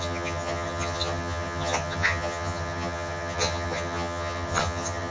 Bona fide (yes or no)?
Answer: no